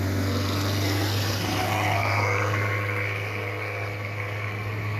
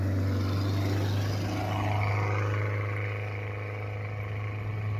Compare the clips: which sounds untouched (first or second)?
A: second